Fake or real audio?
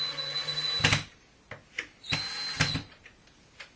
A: real